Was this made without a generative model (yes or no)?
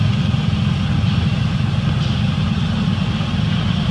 yes